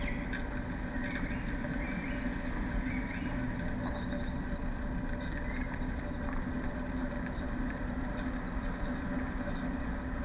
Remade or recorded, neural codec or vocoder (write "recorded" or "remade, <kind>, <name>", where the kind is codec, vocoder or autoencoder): recorded